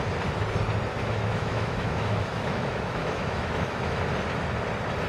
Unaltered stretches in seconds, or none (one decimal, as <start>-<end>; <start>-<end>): 0.0-0.9; 4.0-5.1